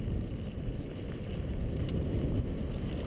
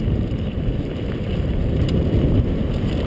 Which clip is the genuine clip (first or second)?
first